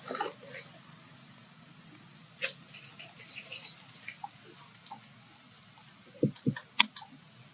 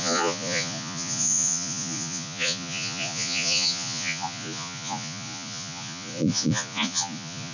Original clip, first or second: first